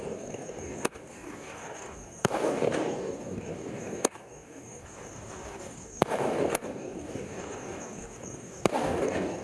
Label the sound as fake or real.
fake